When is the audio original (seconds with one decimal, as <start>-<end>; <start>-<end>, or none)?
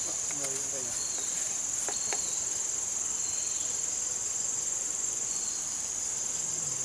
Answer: 0.0-4.2; 5.4-6.8